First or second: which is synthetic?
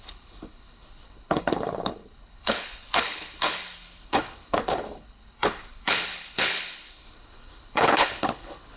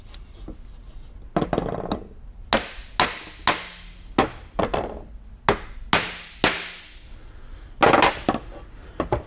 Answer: first